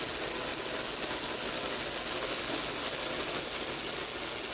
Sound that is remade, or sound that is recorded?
recorded